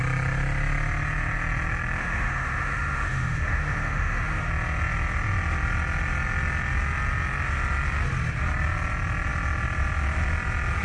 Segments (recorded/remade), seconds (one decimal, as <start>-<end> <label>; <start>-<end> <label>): 0.0-2.0 recorded; 2.0-4.5 remade; 4.5-10.8 recorded